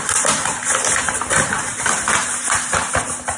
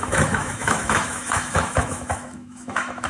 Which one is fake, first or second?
second